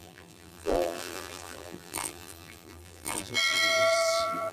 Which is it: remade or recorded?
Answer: remade